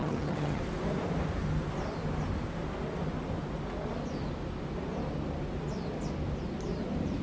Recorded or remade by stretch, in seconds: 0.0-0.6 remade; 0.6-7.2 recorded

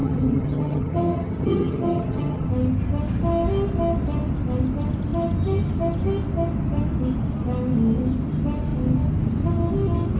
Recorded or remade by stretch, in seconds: 0.0-2.5 remade; 2.5-10.2 recorded

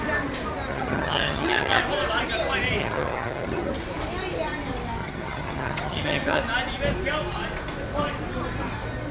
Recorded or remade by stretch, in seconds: 0.0-0.7 recorded; 0.7-1.8 remade; 1.8-2.8 recorded; 2.8-3.7 remade; 3.7-5.0 recorded; 5.0-6.4 remade; 6.4-9.1 recorded

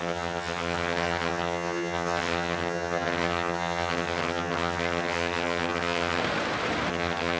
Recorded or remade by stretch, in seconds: 0.0-6.2 remade; 6.2-6.9 recorded; 6.9-7.4 remade

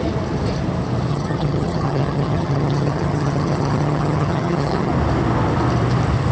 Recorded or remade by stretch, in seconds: 0.0-1.1 recorded; 1.1-4.9 remade; 4.9-6.3 recorded